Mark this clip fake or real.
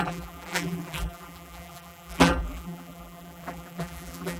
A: fake